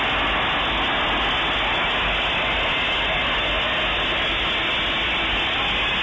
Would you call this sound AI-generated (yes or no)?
no